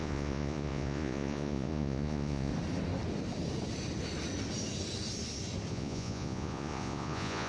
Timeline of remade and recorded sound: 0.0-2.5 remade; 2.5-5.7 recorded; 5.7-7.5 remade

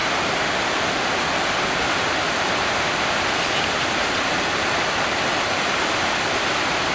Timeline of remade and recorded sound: 0.0-6.9 recorded

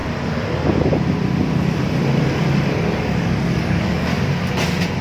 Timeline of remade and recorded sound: 0.0-3.0 recorded; 3.0-4.1 remade; 4.1-5.0 recorded

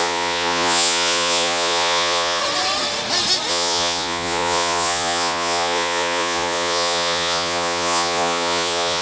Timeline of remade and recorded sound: 0.0-2.4 remade; 2.4-3.5 recorded; 3.5-9.0 remade